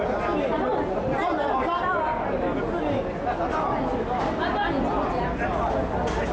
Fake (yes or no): no